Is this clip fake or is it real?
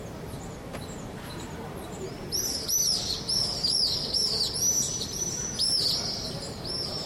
fake